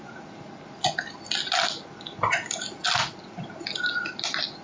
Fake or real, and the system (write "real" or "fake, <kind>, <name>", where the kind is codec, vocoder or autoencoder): real